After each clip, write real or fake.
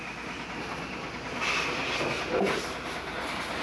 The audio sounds real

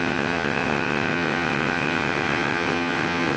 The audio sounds fake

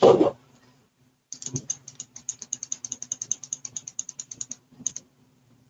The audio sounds fake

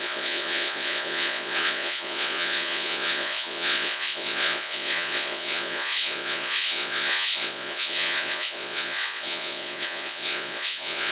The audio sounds fake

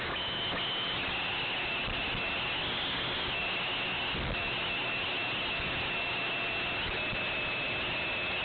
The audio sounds real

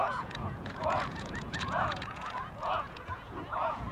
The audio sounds fake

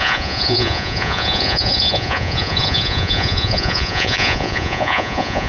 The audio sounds fake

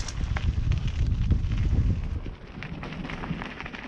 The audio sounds real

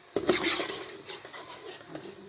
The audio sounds real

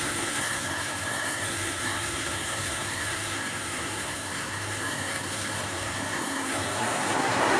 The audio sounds fake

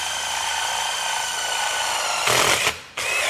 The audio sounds real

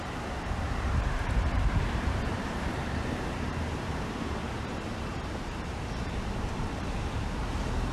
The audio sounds fake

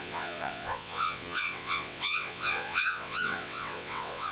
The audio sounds fake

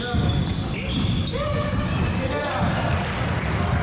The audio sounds real